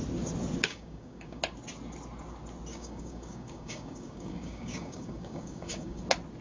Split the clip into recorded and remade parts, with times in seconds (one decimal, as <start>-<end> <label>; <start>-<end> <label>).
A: 0.0-0.6 recorded; 0.6-1.4 remade; 1.4-2.7 recorded; 2.7-6.0 remade; 6.0-6.4 recorded